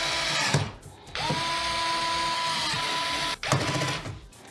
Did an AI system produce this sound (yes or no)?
no